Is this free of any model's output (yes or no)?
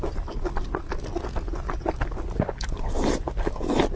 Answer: yes